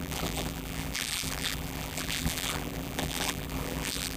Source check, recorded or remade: remade